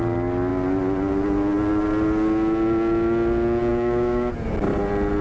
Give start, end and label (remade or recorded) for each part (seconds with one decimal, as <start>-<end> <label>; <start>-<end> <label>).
0.0-3.7 recorded; 3.7-4.3 remade; 4.3-5.2 recorded